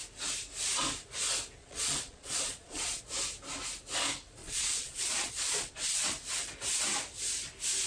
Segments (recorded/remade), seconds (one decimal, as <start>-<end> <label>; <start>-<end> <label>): 0.0-1.6 recorded; 1.6-3.0 remade; 3.0-4.4 recorded; 4.4-6.1 remade; 6.1-7.9 recorded